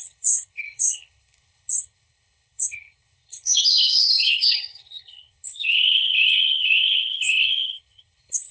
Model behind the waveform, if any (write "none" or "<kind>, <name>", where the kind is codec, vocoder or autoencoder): codec, HILCodec